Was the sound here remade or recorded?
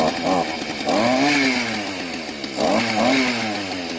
recorded